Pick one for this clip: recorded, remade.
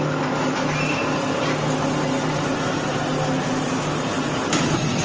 recorded